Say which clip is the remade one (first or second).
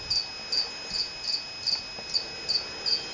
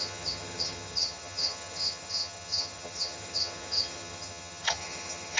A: second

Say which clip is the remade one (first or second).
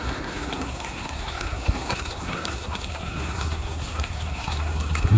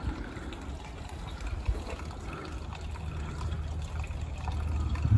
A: first